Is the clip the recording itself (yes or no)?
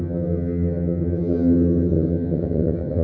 no